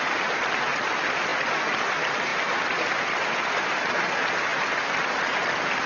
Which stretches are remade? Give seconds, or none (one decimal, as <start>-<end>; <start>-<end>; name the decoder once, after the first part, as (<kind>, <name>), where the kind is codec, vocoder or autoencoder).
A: none